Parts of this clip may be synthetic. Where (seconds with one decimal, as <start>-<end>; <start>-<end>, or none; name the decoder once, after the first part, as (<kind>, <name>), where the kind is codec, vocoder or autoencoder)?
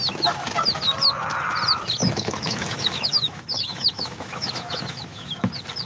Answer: 2.0-5.5 (autoencoder, DAC-VAE)